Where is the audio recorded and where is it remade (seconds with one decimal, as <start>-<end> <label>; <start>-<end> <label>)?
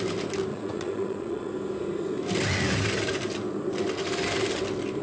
0.0-0.5 recorded; 0.5-1.5 remade; 1.5-5.0 recorded